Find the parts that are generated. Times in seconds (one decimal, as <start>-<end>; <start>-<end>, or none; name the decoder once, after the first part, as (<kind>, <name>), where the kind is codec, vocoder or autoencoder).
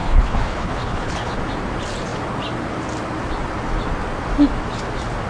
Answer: 0.0-1.4 (codec, HILCodec)